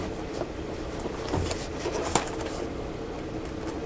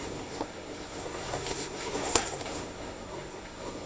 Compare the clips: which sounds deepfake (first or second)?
second